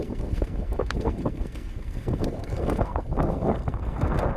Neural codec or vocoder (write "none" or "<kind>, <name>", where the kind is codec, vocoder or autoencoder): codec, SNAC